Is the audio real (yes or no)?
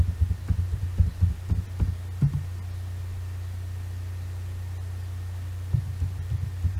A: yes